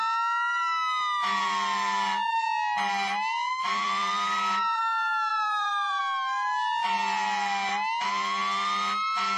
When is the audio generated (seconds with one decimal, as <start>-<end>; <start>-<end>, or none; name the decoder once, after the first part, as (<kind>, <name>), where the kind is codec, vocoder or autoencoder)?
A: 3.3-4.8 (vocoder, BigVGAN v2); 5.3-6.0